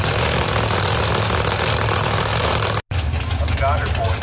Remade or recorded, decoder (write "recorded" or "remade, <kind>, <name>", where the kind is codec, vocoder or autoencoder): recorded